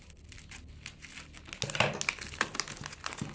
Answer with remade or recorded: recorded